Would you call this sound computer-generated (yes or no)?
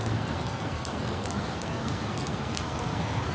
yes